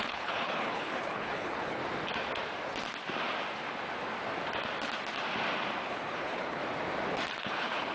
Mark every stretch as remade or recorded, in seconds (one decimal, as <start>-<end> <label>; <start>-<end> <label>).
0.0-1.8 remade; 1.8-5.9 recorded; 5.9-6.6 remade; 6.6-7.4 recorded; 7.4-7.9 remade